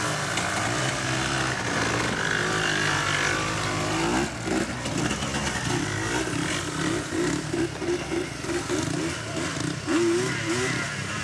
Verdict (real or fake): real